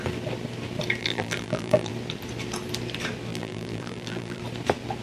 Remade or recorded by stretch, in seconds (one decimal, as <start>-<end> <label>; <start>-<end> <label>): 0.0-1.0 recorded; 1.0-1.9 remade; 1.9-3.3 recorded; 3.3-4.4 remade; 4.4-5.0 recorded